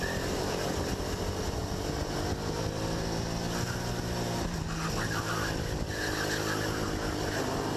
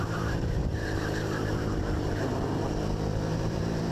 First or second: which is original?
first